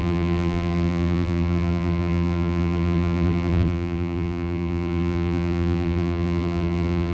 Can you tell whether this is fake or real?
fake